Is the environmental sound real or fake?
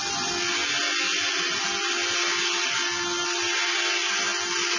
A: real